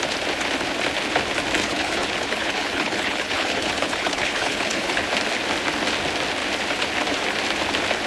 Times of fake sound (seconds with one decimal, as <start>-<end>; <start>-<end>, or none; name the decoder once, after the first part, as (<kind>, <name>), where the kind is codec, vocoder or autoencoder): 1.6-5.0 (codec, HILCodec)